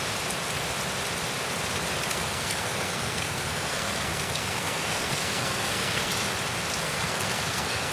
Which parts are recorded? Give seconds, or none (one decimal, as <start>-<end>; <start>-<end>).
0.0-2.1; 6.1-6.8